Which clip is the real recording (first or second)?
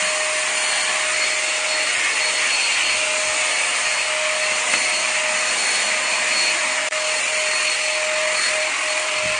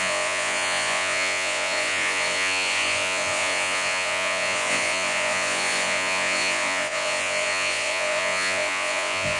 first